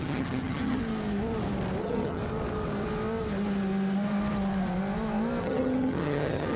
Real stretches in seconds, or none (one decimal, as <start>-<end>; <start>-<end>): 0.8-1.8; 2.2-5.4